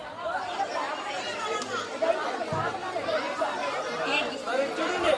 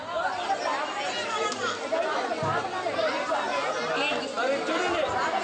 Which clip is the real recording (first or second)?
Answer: second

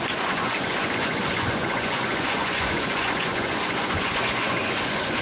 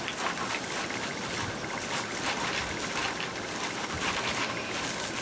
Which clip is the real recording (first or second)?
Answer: second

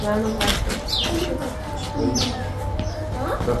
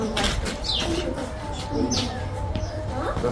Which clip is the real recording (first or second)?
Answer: first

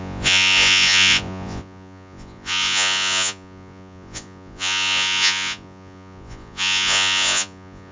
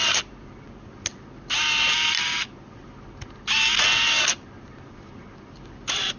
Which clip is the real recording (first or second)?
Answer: second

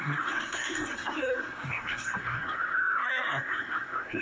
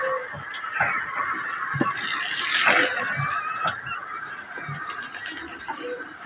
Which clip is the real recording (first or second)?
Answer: second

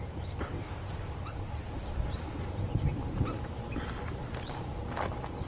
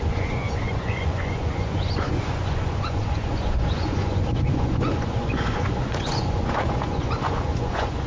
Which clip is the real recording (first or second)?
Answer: first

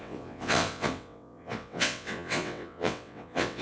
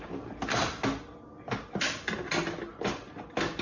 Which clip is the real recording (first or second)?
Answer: second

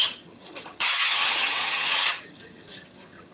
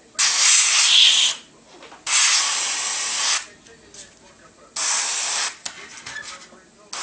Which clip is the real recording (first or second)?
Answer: second